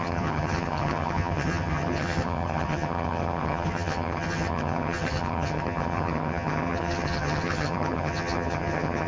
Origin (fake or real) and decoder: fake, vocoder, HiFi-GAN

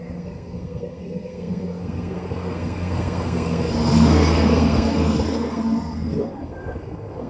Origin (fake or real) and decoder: fake, codec, SNAC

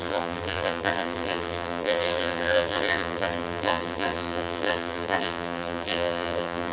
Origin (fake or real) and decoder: fake, vocoder, BigVGAN v2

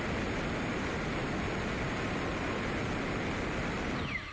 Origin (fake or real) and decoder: real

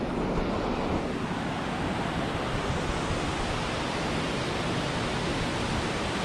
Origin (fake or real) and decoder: real